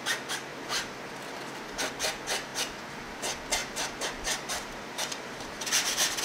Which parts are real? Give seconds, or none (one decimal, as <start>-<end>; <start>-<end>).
0.0-3.6

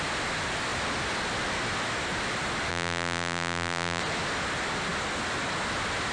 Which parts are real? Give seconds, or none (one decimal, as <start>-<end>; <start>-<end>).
0.0-2.7; 4.0-6.1

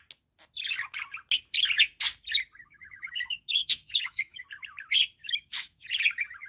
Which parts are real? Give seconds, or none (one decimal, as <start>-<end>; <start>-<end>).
0.0-2.6; 4.4-5.2; 5.9-6.5

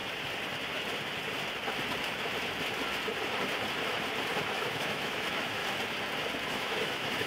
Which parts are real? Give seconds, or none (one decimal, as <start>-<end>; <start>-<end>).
0.0-4.4; 5.6-6.5